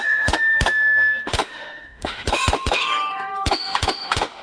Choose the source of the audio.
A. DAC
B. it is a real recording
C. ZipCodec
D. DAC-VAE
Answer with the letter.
D